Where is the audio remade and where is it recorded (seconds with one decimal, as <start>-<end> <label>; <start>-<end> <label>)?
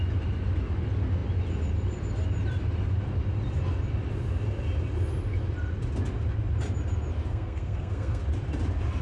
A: 0.0-7.3 recorded; 7.3-8.2 remade; 8.2-9.0 recorded